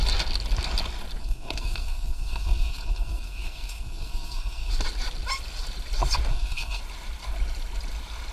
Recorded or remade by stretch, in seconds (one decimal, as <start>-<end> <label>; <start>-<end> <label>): 0.0-1.2 recorded; 1.2-4.7 remade; 4.7-6.3 recorded; 6.3-6.8 remade; 6.8-8.3 recorded